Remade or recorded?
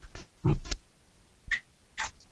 remade